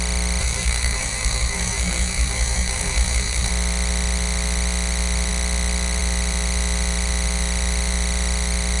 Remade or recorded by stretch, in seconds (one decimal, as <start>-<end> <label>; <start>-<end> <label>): 0.0-0.4 recorded; 0.4-3.5 remade; 3.5-8.8 recorded